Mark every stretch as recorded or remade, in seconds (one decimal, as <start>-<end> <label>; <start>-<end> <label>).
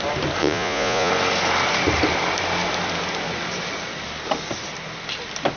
0.0-0.4 recorded; 0.4-1.1 remade; 1.1-5.6 recorded